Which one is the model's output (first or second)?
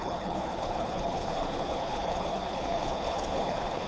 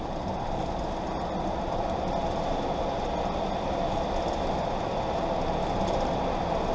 first